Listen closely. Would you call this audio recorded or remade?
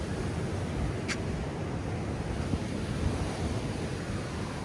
recorded